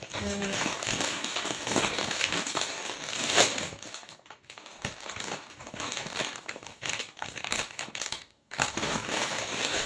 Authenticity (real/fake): fake